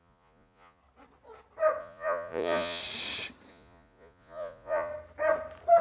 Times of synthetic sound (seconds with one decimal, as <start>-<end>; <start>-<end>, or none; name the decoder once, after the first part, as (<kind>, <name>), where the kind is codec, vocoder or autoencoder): 0.0-0.8 (vocoder, Vocos); 1.8-2.8; 3.5-4.9